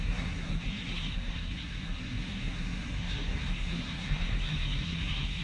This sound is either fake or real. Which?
fake